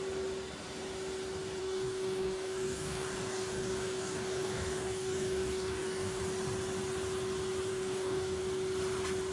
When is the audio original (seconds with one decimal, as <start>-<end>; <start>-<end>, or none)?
0.0-1.6; 6.2-7.7; 8.4-9.3